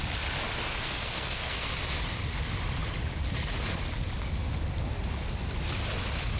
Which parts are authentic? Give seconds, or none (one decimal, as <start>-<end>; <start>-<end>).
0.0-0.7; 1.7-6.4